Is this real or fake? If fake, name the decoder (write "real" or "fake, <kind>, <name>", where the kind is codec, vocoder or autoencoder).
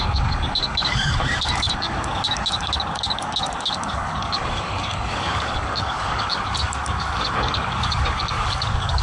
fake, codec, DAC